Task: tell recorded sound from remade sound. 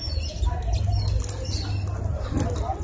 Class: recorded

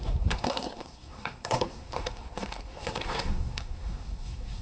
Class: remade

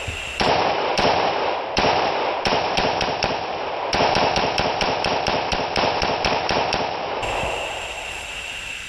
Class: remade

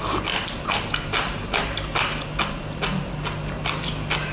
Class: recorded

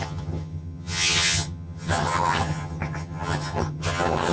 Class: remade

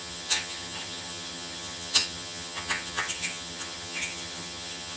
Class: remade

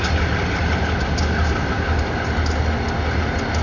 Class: recorded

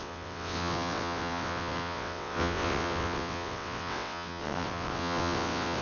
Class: remade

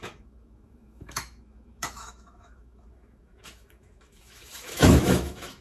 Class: remade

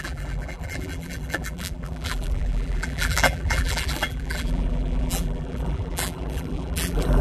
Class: remade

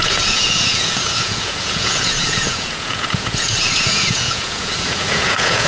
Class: remade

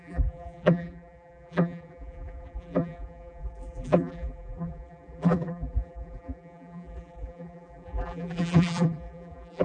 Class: remade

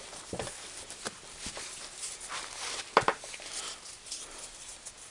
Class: recorded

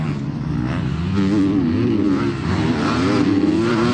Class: recorded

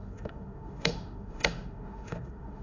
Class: remade